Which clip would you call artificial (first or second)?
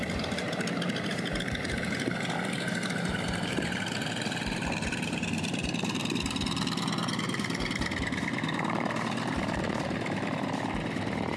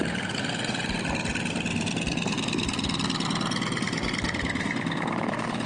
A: first